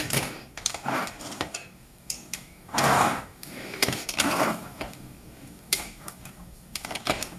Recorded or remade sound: remade